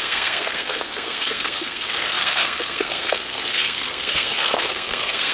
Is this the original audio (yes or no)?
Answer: no